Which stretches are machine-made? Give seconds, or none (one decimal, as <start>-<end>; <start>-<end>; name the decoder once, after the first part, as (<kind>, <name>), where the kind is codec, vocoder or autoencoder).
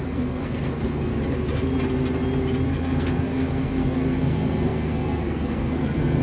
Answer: 0.0-1.1 (codec, SNAC); 2.7-6.2